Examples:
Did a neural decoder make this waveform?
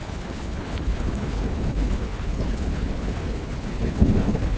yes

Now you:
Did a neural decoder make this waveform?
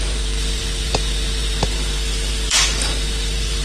yes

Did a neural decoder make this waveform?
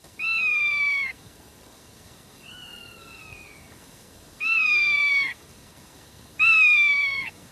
yes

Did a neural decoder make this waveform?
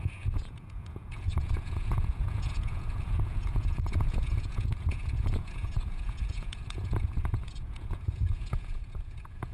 yes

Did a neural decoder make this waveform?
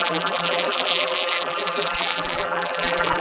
yes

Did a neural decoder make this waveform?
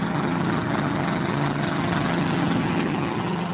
yes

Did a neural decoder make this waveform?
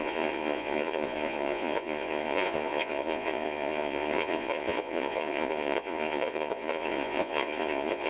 yes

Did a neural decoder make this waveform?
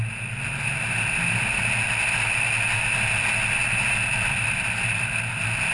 no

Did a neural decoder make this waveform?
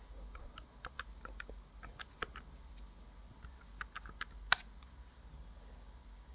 no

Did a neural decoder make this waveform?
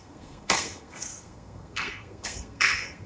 yes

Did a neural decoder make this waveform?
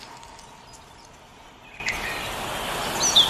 no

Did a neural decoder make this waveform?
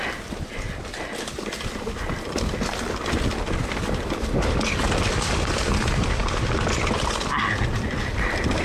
no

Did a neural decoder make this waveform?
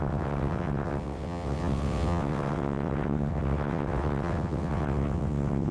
yes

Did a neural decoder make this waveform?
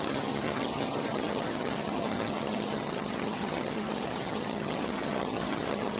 yes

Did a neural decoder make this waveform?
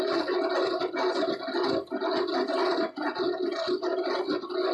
no